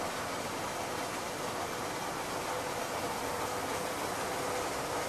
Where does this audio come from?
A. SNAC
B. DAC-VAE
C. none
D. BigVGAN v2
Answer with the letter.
C